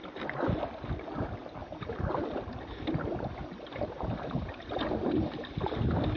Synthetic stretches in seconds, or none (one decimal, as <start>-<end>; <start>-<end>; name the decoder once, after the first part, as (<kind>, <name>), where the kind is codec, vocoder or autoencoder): 1.6-5.3 (vocoder, BigVGAN v2)

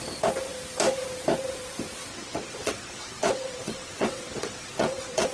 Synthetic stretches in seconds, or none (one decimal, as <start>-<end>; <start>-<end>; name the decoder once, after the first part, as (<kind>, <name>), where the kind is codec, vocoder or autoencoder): 2.1-5.3 (vocoder, WaveNeXt)

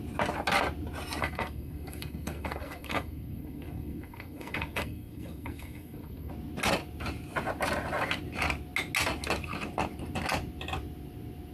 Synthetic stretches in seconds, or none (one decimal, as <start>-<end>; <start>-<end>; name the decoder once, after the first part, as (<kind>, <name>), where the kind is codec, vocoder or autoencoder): 1.2-6.3 (codec, SNAC)

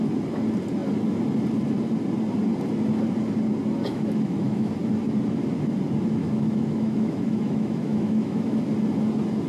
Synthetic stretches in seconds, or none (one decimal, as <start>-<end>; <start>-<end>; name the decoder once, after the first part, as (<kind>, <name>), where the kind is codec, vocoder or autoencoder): 3.9-4.7 (autoencoder, DAC-VAE); 6.2-8.6

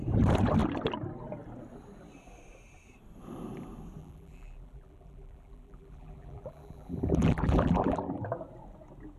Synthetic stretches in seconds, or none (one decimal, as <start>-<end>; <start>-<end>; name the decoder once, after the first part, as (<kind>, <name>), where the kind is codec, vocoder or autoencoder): 4.0-8.2 (vocoder, BigVGAN v2)

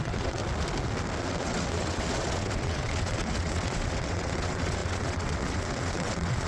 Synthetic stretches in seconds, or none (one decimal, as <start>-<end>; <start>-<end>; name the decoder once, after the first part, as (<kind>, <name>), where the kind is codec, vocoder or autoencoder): 0.0-0.4 (vocoder, WaveNeXt); 1.2-6.5

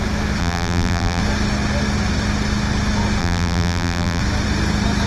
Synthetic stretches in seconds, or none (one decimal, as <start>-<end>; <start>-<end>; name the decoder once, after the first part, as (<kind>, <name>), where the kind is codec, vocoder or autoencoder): 0.4-1.2 (vocoder, BigVGAN v2); 3.2-4.2